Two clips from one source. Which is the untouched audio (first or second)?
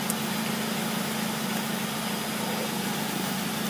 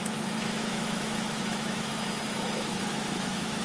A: first